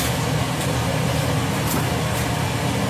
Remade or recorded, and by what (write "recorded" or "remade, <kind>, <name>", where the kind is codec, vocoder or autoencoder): recorded